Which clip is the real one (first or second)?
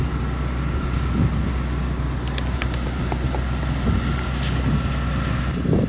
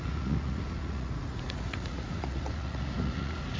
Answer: first